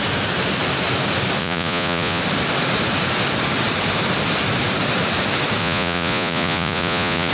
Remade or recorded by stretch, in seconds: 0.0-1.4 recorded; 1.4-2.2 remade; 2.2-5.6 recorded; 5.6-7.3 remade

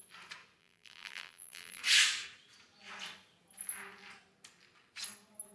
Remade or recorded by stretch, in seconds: 0.0-0.6 recorded; 0.6-1.8 remade; 1.8-5.5 recorded

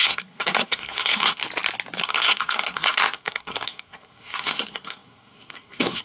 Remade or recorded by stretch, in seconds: 0.0-1.4 remade; 1.4-2.0 recorded; 2.0-6.0 remade

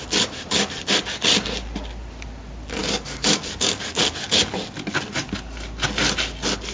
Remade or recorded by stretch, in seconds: 0.0-2.8 recorded; 2.8-4.0 remade; 4.0-6.7 recorded

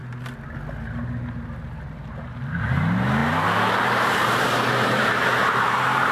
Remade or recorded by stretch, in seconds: 0.0-2.1 recorded; 2.1-6.1 remade

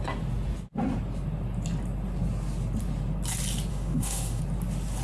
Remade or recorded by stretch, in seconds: 0.0-3.7 recorded; 3.7-4.4 remade; 4.4-5.0 recorded

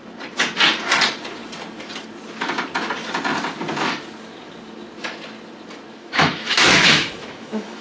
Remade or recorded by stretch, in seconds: 0.0-5.9 recorded; 5.9-7.8 remade